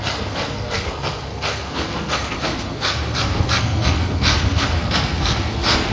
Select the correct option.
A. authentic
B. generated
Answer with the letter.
B